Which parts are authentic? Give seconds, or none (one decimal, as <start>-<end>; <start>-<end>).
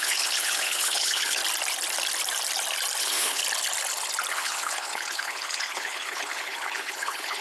1.4-3.0; 3.4-4.3